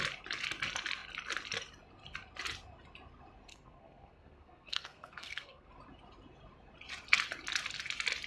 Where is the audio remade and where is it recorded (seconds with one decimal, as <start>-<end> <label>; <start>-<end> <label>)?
0.0-3.5 recorded; 3.5-5.7 remade; 5.7-8.3 recorded